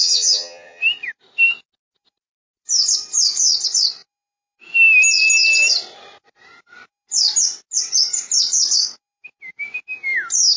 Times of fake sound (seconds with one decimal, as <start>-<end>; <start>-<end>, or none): 0.0-0.8